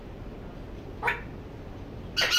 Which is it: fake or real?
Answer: real